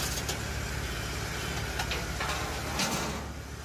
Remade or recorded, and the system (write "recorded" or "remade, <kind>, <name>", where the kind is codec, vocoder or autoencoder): recorded